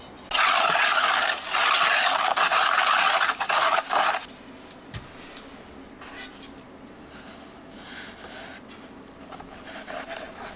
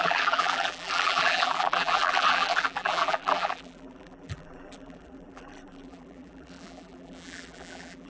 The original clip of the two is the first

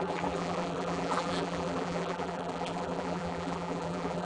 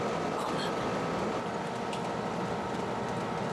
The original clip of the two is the second